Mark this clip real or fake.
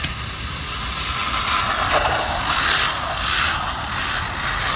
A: real